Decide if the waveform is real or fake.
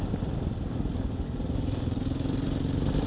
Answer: real